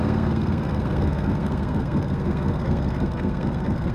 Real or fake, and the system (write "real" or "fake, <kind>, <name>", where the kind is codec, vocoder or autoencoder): fake, codec, SNAC